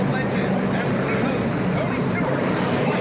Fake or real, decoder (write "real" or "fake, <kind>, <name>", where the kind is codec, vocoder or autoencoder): real